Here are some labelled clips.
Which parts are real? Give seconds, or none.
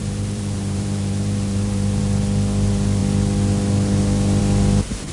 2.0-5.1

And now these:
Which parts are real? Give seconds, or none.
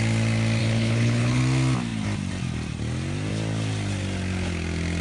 0.0-0.6; 1.4-5.0